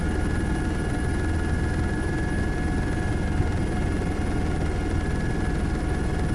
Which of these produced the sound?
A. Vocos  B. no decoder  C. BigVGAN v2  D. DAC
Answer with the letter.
B